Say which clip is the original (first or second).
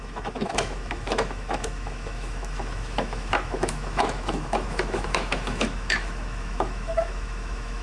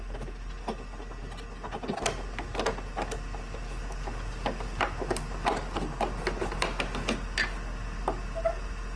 second